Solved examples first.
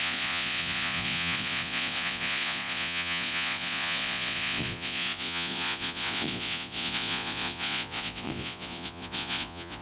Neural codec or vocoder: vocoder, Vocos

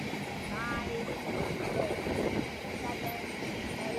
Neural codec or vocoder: none